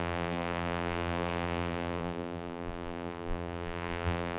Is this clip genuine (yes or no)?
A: no